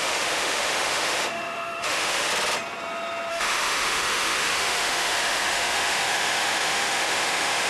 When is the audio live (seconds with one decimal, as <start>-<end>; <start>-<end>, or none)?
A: 2.3-3.3

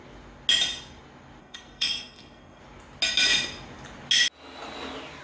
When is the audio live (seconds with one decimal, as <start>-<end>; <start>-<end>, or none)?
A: 0.0-1.4; 2.6-5.2

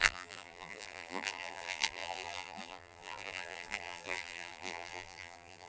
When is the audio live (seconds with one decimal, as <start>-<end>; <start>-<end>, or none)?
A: none

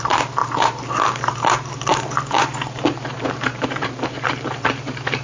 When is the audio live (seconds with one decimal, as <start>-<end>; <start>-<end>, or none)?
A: none

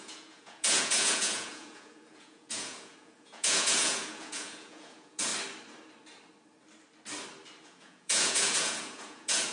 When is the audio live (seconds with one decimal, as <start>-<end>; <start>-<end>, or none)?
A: 5.3-7.6